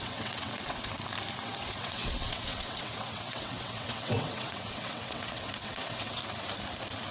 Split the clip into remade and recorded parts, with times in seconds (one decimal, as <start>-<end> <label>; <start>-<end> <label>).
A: 0.0-0.9 remade; 0.9-1.4 recorded; 1.4-6.2 remade; 6.2-7.1 recorded